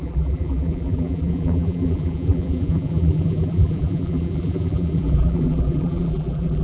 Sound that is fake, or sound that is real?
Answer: fake